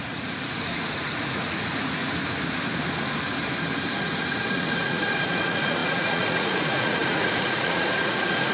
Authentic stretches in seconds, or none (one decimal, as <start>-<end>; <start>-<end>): 2.0-3.9